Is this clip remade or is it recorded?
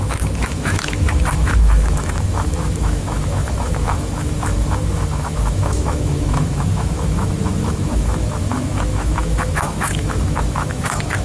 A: remade